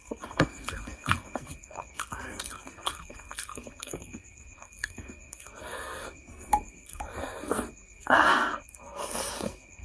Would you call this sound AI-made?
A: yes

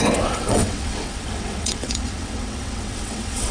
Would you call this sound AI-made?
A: yes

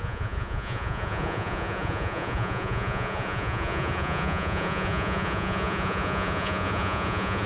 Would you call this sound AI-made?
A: yes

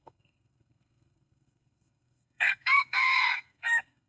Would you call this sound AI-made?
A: yes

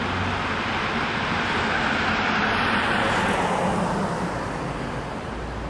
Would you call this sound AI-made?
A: no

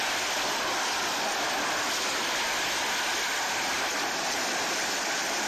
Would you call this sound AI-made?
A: no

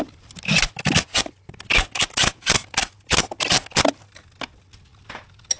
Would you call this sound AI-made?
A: no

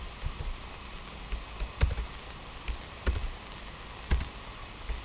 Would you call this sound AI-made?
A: no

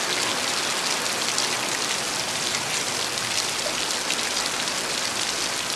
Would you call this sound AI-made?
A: no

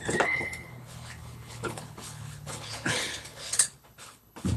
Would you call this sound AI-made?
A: yes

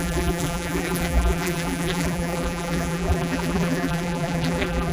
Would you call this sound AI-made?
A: yes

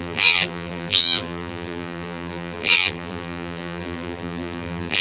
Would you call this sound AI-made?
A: yes